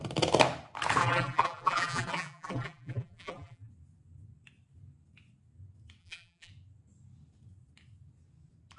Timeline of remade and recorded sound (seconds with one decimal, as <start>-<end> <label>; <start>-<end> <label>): 0.0-1.0 recorded; 1.0-3.7 remade; 3.7-6.0 recorded; 6.0-6.5 remade; 6.5-8.8 recorded